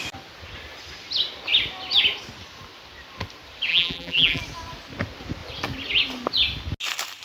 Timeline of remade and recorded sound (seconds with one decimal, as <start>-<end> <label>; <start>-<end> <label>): 0.0-3.7 recorded; 3.7-4.4 remade; 4.4-7.2 recorded